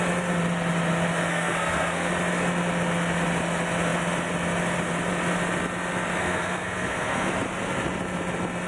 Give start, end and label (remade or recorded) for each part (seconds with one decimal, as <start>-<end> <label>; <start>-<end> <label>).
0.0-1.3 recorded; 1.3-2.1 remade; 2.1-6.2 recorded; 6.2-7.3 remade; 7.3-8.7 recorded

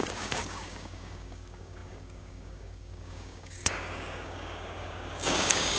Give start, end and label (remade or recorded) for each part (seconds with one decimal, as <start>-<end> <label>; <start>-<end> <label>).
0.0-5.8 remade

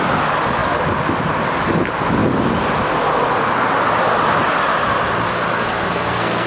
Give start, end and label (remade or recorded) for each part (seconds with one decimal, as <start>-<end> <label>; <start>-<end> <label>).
0.0-5.5 recorded; 5.5-6.5 remade

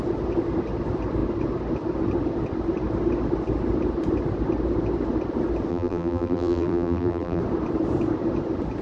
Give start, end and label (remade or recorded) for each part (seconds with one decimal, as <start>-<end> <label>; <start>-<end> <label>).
0.0-5.7 recorded; 5.7-7.4 remade; 7.4-8.8 recorded